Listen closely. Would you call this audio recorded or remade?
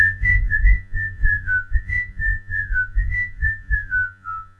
remade